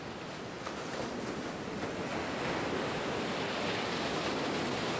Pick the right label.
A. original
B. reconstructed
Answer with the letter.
A